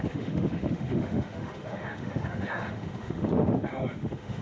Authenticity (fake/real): fake